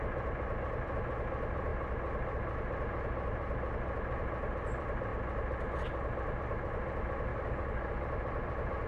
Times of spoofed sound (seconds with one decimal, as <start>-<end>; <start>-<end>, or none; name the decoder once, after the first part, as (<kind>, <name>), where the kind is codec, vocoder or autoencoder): 7.3-7.9 (codec, DAC)